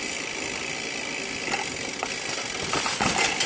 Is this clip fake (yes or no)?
no